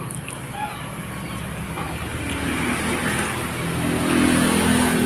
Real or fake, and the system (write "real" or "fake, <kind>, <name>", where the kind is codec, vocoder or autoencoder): real